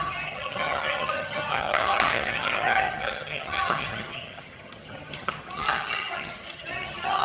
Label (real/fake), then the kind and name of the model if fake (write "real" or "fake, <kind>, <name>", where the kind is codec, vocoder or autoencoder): fake, vocoder, HiFi-GAN